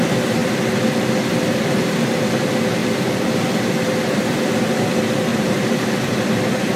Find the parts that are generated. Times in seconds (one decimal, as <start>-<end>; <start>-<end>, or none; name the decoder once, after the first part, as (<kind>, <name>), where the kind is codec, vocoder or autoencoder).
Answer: 2.8-3.3 (vocoder, BigVGAN v2); 5.3-6.1